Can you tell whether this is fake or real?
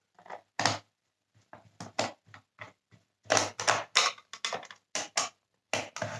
real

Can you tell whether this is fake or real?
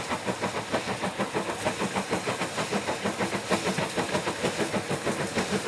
real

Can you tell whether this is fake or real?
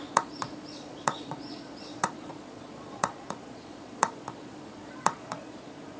fake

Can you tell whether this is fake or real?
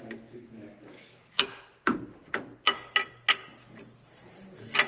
real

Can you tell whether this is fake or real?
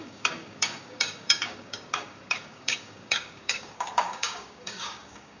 fake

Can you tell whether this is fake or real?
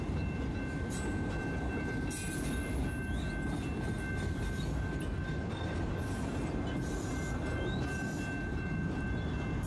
real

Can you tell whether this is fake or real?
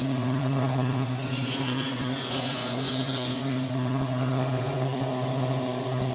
fake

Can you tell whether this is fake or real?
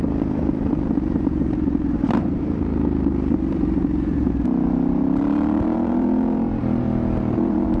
fake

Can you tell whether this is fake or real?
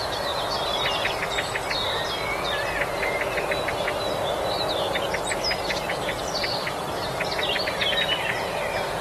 real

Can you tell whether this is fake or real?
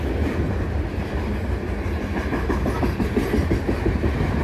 real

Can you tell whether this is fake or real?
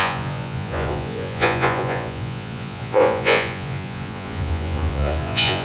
fake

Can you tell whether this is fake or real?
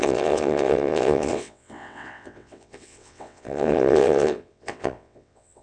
fake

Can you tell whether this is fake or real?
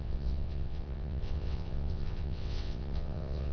fake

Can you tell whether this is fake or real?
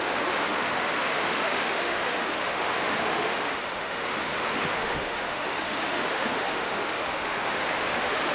fake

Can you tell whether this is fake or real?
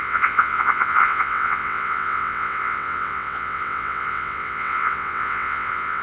fake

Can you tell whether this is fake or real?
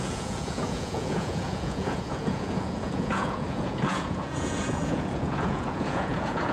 fake